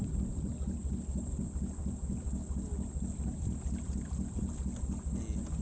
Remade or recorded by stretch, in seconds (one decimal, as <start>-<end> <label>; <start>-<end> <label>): 0.0-5.6 recorded